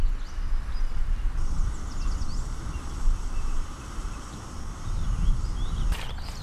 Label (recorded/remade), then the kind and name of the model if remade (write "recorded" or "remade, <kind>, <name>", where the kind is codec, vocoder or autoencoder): recorded